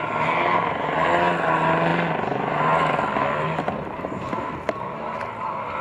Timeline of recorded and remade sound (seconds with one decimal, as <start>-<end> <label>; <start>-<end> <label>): 0.0-5.8 recorded